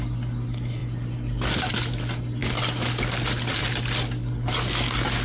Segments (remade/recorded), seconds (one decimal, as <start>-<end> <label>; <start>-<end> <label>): 0.0-5.2 recorded